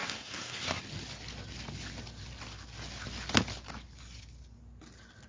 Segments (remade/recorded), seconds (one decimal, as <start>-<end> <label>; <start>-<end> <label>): 0.0-0.8 remade; 0.8-5.3 recorded